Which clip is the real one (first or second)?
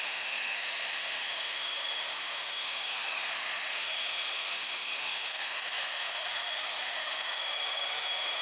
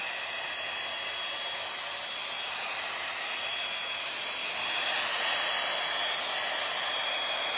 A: second